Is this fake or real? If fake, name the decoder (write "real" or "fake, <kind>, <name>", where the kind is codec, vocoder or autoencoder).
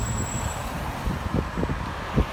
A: real